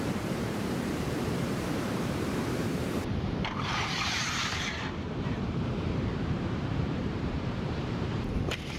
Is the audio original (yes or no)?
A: no